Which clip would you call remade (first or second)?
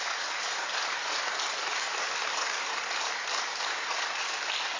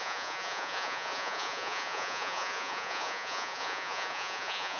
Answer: second